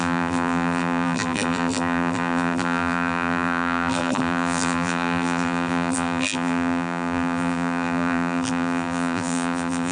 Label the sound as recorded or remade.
remade